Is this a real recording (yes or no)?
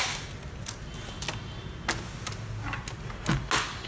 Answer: yes